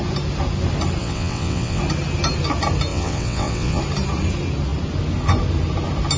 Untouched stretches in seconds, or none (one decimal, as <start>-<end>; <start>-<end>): 0.0-1.0; 1.8-2.9; 3.8-6.2